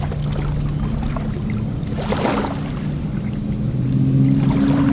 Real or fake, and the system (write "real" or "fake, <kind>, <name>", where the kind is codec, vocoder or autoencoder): real